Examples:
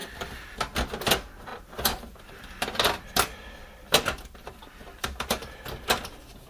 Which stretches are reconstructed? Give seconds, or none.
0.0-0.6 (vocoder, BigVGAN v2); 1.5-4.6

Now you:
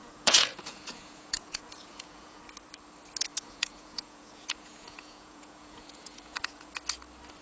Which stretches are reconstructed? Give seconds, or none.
0.0-2.4 (vocoder, Vocos); 3.3-6.7

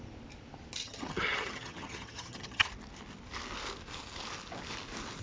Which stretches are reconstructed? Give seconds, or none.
0.8-2.7 (vocoder, HiFi-GAN)

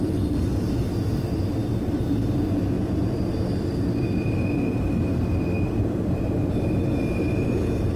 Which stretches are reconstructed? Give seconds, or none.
none

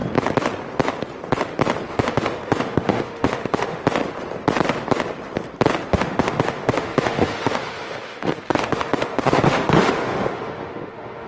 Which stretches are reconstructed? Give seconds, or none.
1.9-3.8 (autoencoder, DAC-VAE); 5.9-11.3

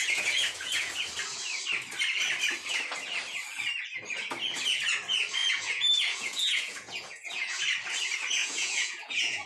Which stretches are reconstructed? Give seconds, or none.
0.0-0.9 (vocoder, Vocos); 5.4-7.6; 8.4-9.5